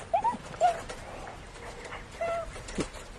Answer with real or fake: real